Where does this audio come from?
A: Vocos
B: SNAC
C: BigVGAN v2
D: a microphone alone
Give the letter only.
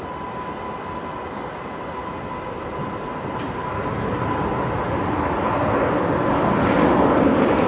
D